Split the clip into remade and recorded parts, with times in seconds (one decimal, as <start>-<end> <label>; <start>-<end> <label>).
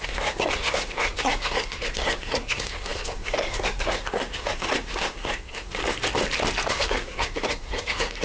0.0-5.8 remade; 5.8-6.7 recorded; 6.7-8.2 remade